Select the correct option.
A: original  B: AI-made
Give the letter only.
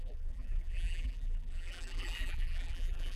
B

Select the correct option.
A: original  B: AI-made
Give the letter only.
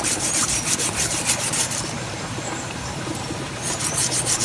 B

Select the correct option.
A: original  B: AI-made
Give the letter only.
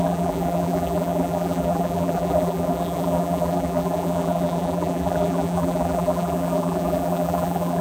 B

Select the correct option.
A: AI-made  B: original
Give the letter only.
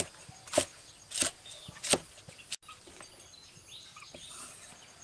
B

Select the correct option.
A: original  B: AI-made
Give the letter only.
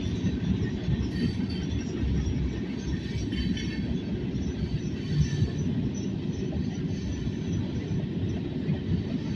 A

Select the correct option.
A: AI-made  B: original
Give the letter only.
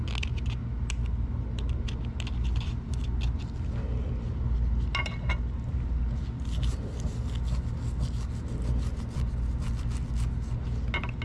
B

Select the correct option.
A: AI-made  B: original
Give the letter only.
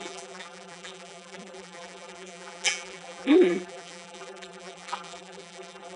A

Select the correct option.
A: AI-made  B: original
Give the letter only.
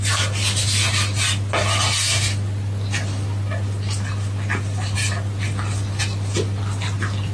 B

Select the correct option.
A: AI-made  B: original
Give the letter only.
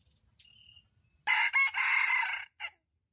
B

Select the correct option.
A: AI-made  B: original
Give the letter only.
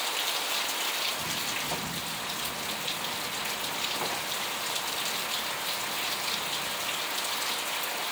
B